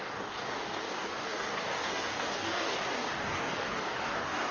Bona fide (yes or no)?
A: no